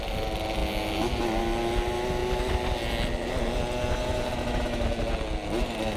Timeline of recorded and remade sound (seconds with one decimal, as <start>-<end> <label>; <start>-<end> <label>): 0.0-6.0 recorded